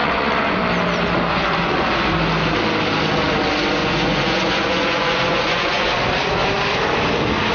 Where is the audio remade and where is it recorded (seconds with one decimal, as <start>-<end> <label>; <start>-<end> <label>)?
0.0-0.6 remade; 0.6-1.3 recorded; 1.3-2.1 remade; 2.1-3.8 recorded; 3.8-6.1 remade; 6.1-7.5 recorded